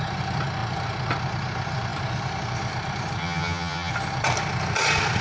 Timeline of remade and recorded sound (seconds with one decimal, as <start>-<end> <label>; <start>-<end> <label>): 0.0-3.2 recorded; 3.2-3.9 remade; 3.9-5.2 recorded